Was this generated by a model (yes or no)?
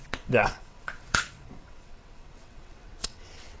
yes